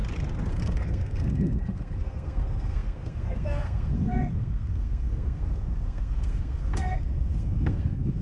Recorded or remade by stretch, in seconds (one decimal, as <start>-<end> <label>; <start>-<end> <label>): 0.0-0.5 recorded; 0.5-8.2 remade